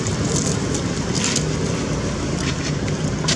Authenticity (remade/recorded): recorded